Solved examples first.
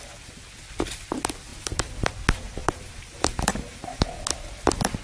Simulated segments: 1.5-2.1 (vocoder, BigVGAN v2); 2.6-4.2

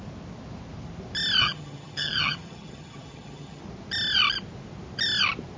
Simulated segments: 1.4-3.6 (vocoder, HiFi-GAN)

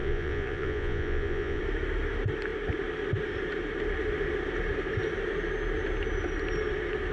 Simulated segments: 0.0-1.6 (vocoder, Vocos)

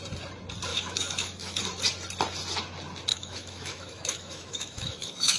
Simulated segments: 0.7-1.6 (autoencoder, DAC-VAE); 3.1-5.4

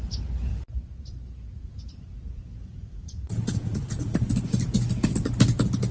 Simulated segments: 2.6-4.3 (vocoder, Vocos)

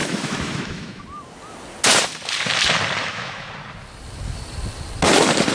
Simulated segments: 0.0-1.0 (autoencoder, DAC-VAE); 3.0-3.5

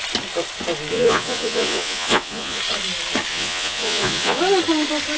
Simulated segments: 0.9-2.6 (vocoder, Vocos); 3.3-4.4

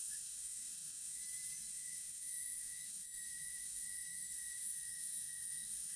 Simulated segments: 0.0-1.2 (autoencoder, DAC-VAE); 1.7-6.0